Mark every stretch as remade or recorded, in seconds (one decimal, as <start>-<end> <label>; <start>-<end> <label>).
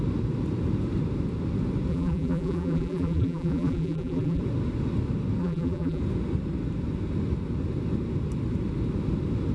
0.0-1.9 recorded; 1.9-4.4 remade; 4.4-5.4 recorded; 5.4-6.0 remade; 6.0-9.5 recorded